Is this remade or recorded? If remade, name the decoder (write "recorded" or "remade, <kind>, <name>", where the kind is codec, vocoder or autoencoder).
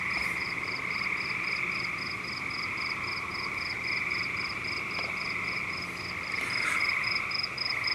recorded